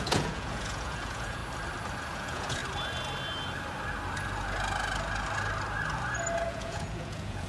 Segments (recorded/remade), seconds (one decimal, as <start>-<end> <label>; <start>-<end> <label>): 0.0-1.4 remade; 1.4-2.1 recorded; 2.1-2.6 remade; 2.6-6.5 recorded; 6.5-7.5 remade